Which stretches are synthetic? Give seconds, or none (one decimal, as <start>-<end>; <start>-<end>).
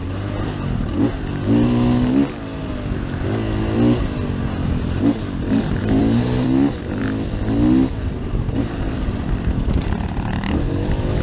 6.0-7.0